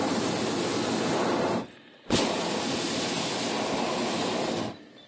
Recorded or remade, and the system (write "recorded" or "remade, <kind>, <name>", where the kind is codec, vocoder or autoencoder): recorded